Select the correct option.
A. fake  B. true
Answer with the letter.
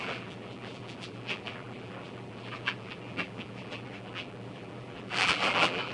A